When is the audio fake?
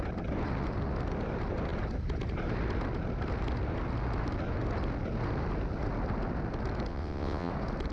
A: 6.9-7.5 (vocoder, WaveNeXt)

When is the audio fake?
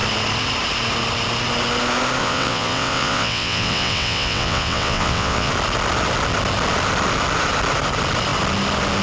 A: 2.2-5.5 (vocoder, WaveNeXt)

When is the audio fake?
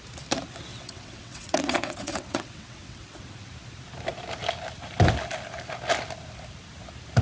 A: 0.7-3.2 (vocoder, WaveNeXt)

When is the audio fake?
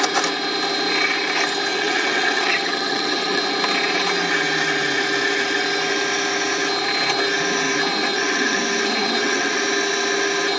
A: 1.7-3.4 (vocoder, WaveNeXt); 8.1-8.6; 9.0-9.6